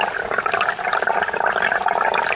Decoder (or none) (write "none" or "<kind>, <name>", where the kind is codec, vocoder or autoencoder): none